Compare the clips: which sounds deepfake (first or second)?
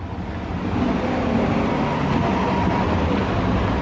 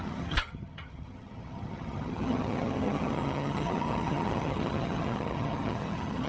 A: second